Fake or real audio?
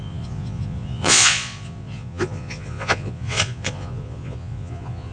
fake